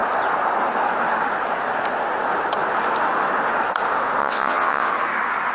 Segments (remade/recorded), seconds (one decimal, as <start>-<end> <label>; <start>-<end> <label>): 0.0-4.2 recorded; 4.2-4.9 remade; 4.9-5.5 recorded